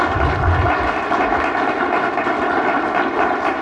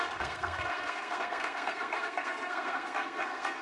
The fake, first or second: second